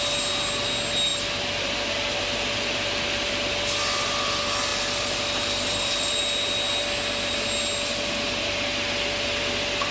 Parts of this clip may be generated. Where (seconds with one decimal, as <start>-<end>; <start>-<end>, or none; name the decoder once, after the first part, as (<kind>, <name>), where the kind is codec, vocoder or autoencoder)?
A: 4.7-6.2 (vocoder, BigVGAN v2)